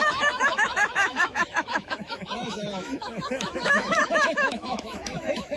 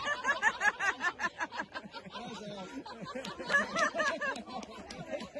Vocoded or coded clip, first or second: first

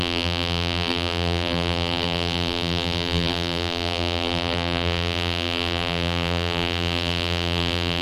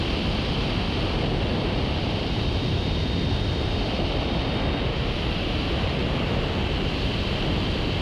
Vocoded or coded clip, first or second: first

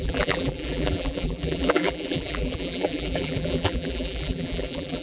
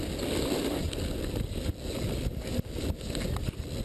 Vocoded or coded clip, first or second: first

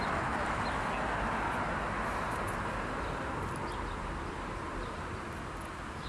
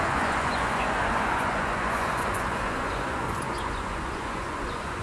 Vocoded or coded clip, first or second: second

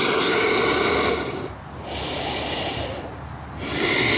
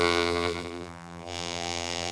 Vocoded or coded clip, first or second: second